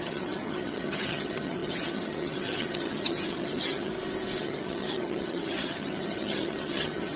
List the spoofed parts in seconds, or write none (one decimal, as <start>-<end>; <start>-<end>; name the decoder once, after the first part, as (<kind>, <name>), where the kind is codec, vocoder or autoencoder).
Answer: 0.0-3.9 (vocoder, HiFi-GAN); 4.4-7.2